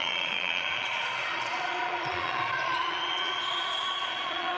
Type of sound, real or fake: fake